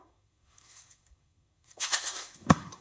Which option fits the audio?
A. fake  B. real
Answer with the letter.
A